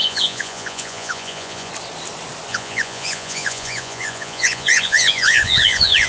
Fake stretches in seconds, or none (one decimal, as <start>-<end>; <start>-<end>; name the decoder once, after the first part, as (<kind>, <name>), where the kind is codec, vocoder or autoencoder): 0.0-1.7 (vocoder, Vocos); 2.5-6.1